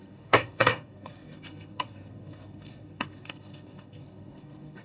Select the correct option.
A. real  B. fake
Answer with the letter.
B